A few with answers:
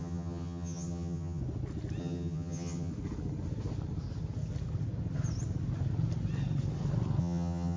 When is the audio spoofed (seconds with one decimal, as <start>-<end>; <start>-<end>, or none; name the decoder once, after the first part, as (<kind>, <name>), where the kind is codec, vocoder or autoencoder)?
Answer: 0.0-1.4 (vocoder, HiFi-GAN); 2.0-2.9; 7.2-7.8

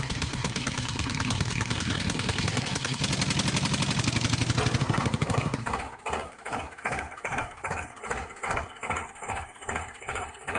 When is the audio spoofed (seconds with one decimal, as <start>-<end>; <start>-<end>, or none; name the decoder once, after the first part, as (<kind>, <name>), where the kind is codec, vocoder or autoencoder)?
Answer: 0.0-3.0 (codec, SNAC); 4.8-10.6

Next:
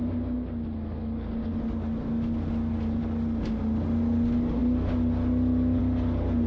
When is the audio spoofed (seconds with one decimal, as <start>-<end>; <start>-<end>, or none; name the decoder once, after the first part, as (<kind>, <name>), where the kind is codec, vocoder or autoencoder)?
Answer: none